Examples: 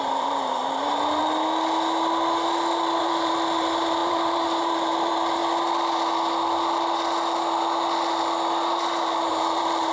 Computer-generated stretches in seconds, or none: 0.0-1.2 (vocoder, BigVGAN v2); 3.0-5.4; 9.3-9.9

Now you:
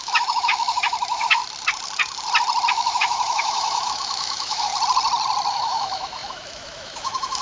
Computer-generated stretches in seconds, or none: 0.0-1.4 (autoencoder, DAC-VAE); 2.7-4.7; 5.5-7.4

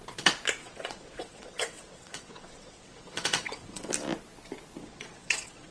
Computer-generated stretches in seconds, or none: 0.6-3.9 (vocoder, WaveNeXt); 4.8-5.7

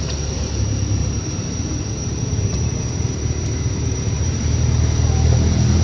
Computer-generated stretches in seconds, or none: 1.0-4.4 (vocoder, BigVGAN v2)

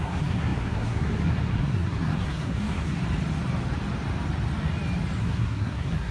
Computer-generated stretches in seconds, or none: 0.0-3.0 (codec, SNAC); 5.2-6.1